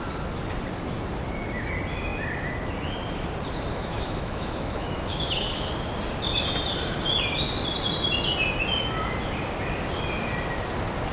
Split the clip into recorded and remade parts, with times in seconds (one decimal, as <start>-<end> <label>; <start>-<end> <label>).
0.0-3.7 recorded; 3.7-5.7 remade; 5.7-11.1 recorded